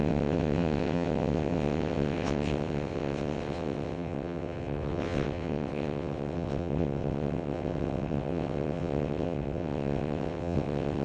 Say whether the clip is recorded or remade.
remade